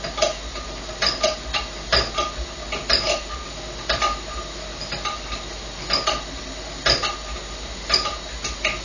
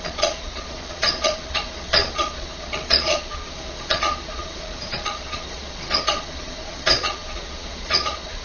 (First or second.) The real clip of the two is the first